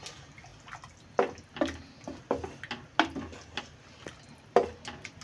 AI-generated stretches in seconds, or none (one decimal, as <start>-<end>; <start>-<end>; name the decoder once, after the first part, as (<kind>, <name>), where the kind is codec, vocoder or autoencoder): none